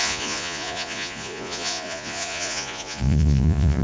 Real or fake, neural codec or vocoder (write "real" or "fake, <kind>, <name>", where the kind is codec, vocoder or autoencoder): fake, vocoder, Vocos